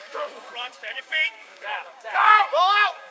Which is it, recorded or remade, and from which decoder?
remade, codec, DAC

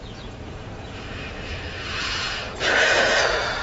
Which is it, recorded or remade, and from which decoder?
remade, vocoder, Vocos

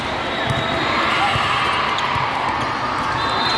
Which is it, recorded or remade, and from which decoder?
recorded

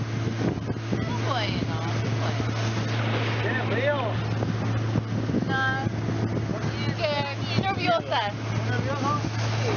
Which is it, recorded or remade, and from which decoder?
recorded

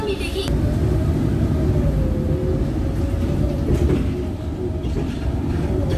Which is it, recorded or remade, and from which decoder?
recorded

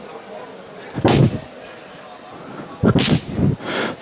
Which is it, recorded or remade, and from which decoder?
recorded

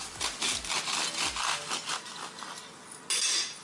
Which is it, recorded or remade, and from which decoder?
recorded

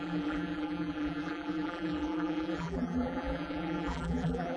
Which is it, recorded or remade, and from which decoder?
remade, vocoder, BigVGAN v2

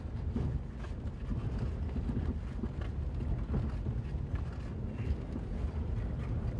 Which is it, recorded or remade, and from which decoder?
recorded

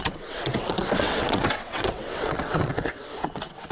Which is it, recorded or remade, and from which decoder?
remade, vocoder, WaveNeXt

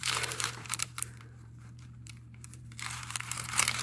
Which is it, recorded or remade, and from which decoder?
remade, vocoder, BigVGAN v2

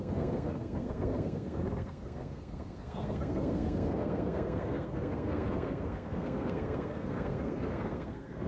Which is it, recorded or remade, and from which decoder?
remade, codec, SNAC